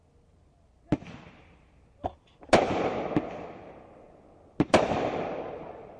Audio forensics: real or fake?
real